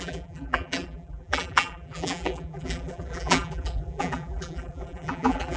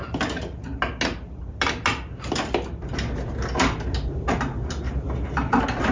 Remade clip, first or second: first